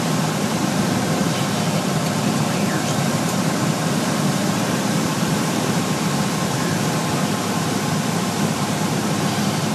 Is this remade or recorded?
remade